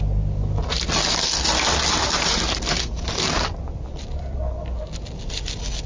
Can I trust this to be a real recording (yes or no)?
yes